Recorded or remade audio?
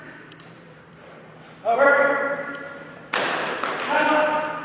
remade